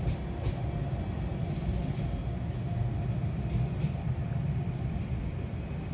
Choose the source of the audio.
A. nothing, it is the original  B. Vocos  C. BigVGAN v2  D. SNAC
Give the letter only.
A